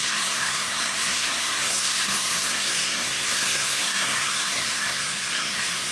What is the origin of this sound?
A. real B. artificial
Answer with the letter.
B